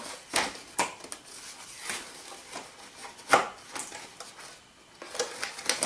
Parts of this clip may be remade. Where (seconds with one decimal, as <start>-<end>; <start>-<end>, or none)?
none

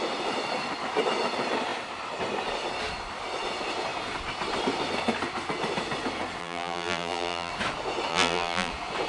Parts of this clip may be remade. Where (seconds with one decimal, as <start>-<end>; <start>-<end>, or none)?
6.4-7.5; 8.1-8.7